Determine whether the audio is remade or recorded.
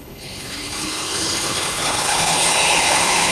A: remade